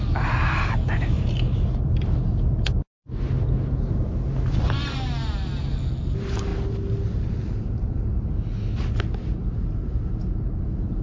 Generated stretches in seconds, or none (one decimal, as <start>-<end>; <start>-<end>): none